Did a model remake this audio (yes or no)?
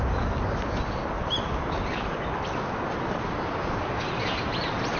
no